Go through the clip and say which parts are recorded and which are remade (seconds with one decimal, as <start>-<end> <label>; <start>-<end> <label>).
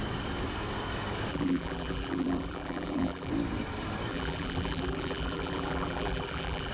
0.0-1.3 recorded; 1.3-3.3 remade; 3.3-4.1 recorded; 4.1-6.7 remade